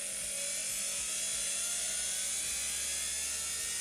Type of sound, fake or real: real